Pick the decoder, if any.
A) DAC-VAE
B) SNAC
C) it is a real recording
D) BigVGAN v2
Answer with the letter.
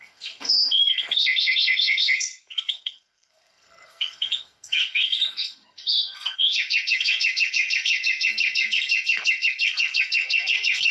B